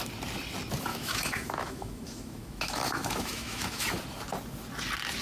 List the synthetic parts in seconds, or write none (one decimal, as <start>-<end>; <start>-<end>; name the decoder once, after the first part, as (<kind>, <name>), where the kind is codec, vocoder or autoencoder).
0.9-4.0 (autoencoder, DAC-VAE)